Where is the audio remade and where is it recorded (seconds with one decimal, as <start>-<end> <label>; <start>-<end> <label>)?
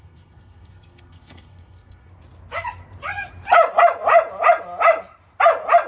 0.0-2.1 remade; 2.1-5.9 recorded